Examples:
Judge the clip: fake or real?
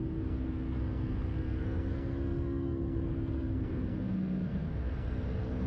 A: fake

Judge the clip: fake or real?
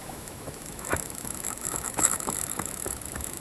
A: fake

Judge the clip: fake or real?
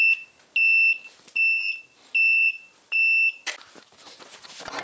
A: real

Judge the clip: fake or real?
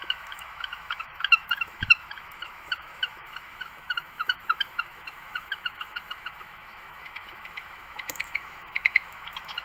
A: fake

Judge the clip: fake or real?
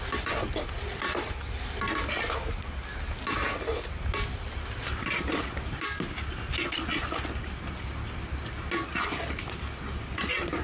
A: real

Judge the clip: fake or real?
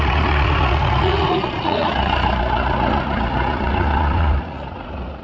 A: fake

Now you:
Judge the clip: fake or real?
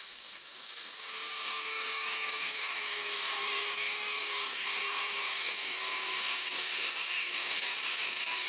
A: fake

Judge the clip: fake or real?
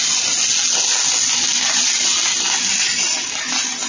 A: real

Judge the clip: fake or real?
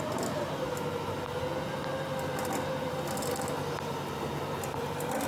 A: real